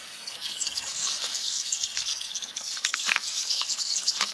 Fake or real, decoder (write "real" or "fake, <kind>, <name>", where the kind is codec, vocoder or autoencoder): fake, codec, SNAC